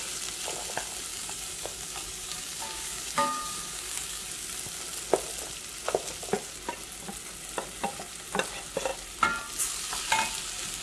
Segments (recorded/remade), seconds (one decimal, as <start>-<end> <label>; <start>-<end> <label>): 0.0-1.1 recorded; 1.1-4.3 remade; 4.3-10.8 recorded